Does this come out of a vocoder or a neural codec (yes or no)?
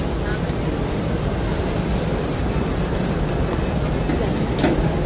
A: no